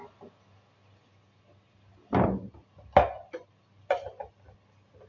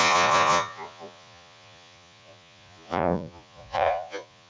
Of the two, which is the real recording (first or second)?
first